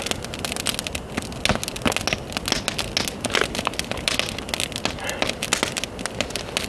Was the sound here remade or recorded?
recorded